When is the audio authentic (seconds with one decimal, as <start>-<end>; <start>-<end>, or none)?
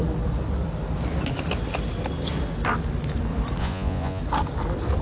0.0-3.6; 4.2-5.0